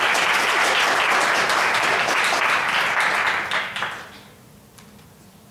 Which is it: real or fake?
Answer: real